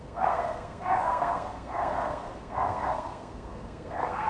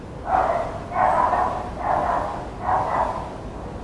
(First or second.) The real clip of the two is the second